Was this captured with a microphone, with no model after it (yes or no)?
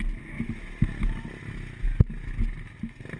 yes